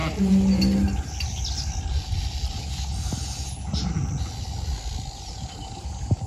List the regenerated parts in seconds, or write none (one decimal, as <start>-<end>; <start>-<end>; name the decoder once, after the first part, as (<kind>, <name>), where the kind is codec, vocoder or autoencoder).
none

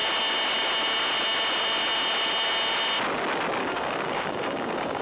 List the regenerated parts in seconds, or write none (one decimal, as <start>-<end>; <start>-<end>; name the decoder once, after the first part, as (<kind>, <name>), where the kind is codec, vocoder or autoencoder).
3.6-5.0 (codec, DAC)

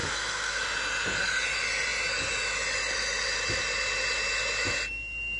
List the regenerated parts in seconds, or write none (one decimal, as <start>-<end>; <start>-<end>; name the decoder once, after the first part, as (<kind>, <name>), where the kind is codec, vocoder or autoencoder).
0.0-0.6 (codec, SNAC)

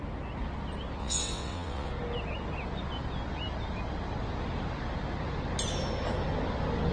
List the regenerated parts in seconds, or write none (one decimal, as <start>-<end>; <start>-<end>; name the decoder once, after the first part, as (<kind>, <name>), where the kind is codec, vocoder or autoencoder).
1.0-1.9 (vocoder, WaveNeXt)